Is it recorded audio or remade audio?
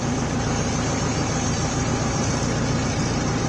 recorded